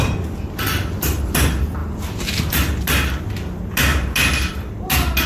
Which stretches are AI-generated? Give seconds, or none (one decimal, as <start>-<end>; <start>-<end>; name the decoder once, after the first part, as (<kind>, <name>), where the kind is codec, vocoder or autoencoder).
none